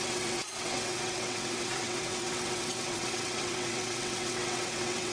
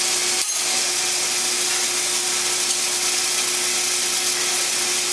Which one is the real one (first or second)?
second